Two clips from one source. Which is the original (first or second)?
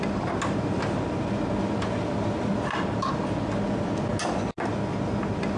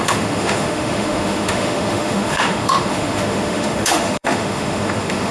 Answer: first